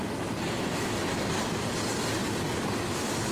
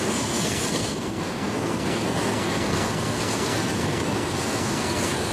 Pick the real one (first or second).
first